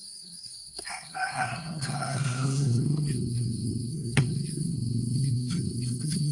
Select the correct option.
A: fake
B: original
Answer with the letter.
A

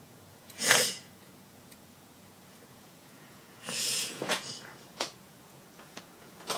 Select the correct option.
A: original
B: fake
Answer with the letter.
B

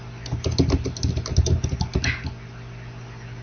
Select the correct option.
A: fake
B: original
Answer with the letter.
B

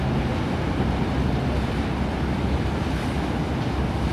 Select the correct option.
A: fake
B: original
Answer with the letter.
B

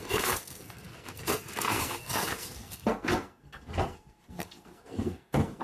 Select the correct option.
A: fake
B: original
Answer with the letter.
A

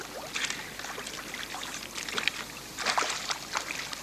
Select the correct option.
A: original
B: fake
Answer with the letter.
A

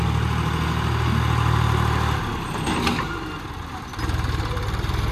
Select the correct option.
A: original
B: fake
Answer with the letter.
A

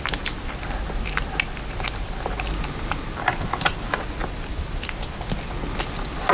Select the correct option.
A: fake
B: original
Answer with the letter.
B